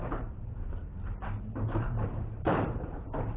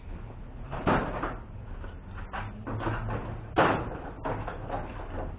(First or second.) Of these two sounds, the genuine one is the second